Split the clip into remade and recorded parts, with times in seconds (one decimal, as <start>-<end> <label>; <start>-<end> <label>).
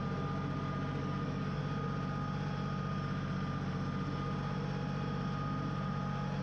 0.0-1.0 recorded; 1.0-1.6 remade; 1.6-6.4 recorded